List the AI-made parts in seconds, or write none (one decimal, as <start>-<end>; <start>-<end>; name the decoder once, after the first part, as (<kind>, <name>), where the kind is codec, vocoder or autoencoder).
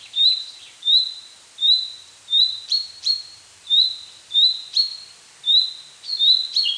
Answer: 0.0-4.9 (vocoder, BigVGAN v2)